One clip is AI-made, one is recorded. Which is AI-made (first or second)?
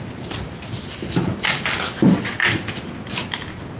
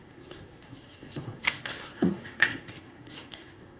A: second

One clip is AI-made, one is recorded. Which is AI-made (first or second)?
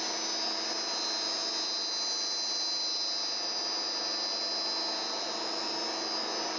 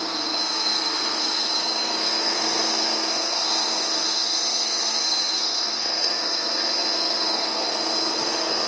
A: second